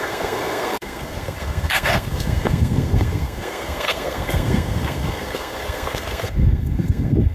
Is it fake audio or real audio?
fake